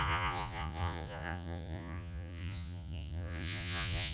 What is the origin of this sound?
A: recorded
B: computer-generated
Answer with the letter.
B